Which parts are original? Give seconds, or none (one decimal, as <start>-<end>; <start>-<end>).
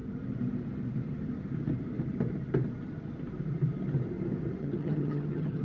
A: 0.0-4.6